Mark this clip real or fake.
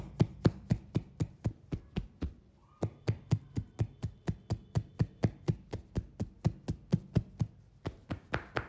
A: real